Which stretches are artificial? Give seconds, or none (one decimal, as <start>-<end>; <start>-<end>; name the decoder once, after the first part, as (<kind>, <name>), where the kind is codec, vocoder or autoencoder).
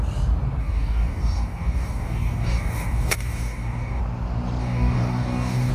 0.6-4.0 (codec, DAC); 4.6-5.7